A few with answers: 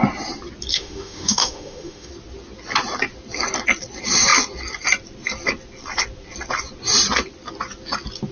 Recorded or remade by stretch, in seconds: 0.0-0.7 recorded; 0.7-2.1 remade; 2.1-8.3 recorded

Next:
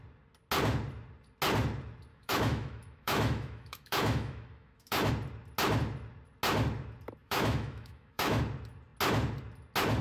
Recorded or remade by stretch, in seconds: 0.0-2.1 recorded; 2.1-5.1 remade; 5.1-7.2 recorded; 7.2-8.4 remade; 8.4-10.0 recorded